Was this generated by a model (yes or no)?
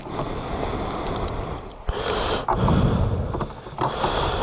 no